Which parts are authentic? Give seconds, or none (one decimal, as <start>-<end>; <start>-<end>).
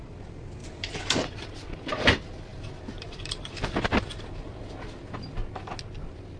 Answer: 5.4-6.4